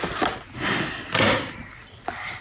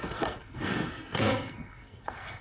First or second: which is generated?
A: second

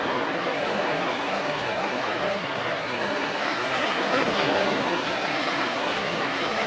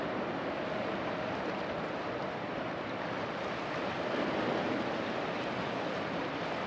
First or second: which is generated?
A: first